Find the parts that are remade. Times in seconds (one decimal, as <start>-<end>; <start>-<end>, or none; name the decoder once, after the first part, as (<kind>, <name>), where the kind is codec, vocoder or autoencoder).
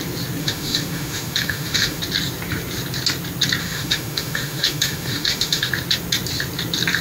0.4-2.0 (autoencoder, DAC-VAE); 3.6-5.7